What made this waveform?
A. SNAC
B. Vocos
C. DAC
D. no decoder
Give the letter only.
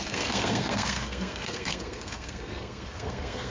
A